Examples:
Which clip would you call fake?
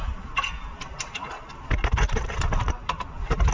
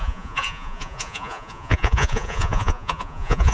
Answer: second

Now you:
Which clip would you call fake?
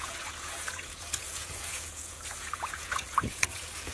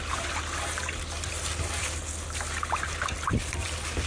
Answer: first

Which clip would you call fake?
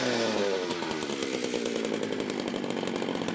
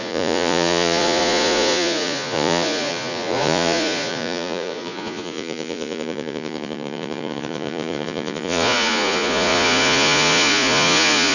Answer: second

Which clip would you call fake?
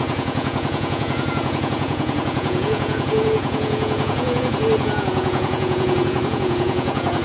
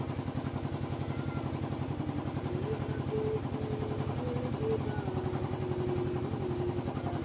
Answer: first